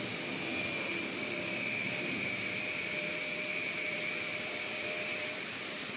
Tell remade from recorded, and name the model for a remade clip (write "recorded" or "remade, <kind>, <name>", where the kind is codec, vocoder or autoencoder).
remade, vocoder, BigVGAN v2